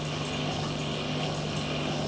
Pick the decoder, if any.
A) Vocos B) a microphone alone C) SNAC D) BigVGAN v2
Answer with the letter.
B